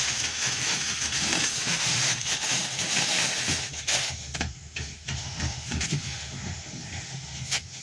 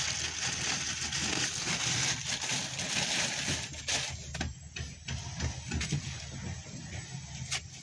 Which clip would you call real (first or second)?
second